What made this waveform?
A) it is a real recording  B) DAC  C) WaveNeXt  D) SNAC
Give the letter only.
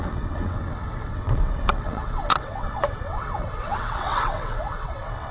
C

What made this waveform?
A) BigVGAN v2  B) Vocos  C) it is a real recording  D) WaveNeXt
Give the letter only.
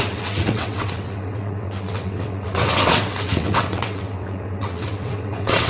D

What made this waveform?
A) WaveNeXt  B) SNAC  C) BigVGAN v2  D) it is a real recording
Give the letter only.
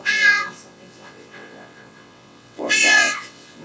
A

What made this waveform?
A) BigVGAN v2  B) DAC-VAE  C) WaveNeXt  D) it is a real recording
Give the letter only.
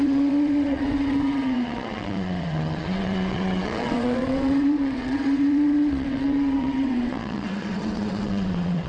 C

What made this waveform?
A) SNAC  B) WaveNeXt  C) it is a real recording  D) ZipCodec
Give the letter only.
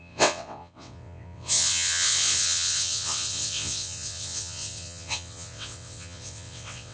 B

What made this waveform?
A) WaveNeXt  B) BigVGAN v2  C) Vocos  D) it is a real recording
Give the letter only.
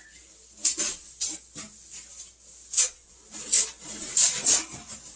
D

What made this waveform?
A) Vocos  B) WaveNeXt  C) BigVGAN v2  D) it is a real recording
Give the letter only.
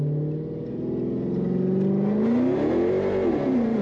D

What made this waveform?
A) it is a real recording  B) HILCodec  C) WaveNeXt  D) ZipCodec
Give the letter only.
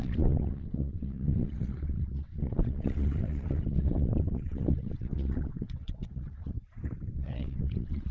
C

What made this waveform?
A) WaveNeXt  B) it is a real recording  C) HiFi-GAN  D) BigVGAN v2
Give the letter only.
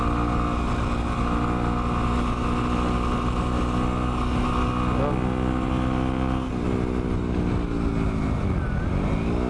B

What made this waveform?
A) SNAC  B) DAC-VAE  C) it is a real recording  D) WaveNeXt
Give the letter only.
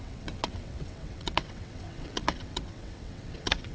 D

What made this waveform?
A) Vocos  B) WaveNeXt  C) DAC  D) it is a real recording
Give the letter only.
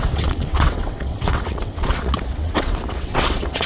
B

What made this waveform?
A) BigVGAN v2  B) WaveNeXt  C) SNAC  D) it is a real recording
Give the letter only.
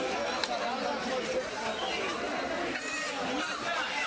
D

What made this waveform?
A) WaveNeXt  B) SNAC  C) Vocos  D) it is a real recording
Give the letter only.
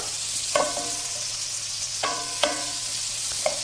A